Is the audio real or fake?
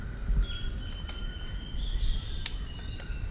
real